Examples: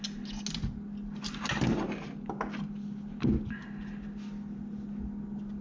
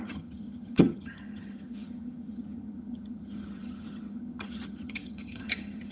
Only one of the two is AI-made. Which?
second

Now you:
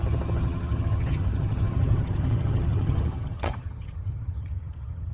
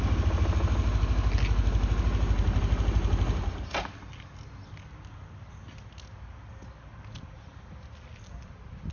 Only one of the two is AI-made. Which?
first